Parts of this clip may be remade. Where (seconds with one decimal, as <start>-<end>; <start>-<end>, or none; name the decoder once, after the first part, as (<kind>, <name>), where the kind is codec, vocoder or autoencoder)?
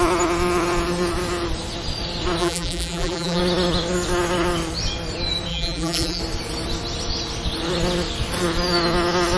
2.4-3.4 (vocoder, BigVGAN v2); 5.5-6.2